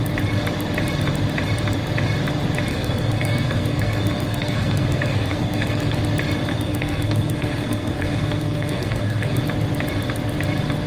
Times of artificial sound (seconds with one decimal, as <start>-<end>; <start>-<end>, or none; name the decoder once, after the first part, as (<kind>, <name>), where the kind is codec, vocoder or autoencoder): 2.7-6.0 (codec, SNAC); 6.5-9.4